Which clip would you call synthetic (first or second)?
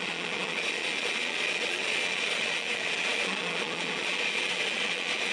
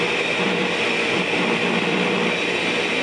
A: first